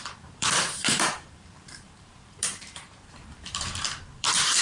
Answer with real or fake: fake